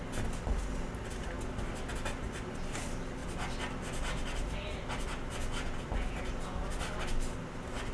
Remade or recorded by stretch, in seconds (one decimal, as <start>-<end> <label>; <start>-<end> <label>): 0.0-7.9 recorded